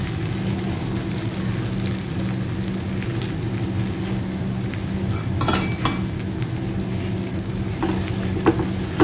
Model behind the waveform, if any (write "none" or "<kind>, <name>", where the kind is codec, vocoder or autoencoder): none